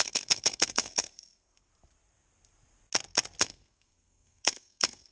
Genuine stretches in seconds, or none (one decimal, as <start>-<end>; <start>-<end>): 1.7-3.4